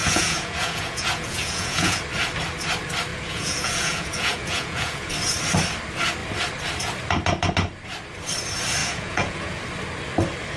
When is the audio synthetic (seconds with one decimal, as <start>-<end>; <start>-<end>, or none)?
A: 0.0-2.0; 3.1-5.1; 8.8-9.6